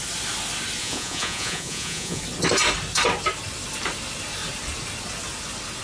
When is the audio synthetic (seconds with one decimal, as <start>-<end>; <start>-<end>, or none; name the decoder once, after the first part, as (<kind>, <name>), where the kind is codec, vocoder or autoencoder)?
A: 0.8-2.2 (vocoder, Vocos)